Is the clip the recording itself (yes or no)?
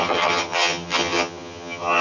no